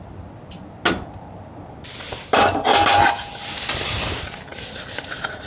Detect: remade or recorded recorded